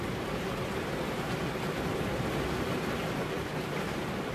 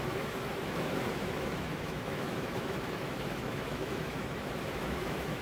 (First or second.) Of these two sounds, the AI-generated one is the second